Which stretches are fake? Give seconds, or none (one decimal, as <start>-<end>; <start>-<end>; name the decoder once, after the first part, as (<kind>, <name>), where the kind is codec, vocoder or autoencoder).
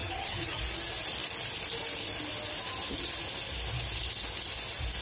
0.0-0.6 (vocoder, HiFi-GAN)